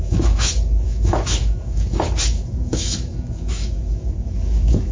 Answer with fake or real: fake